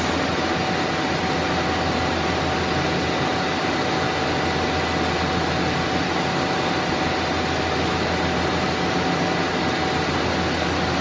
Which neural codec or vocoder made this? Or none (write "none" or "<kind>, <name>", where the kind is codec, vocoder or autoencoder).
none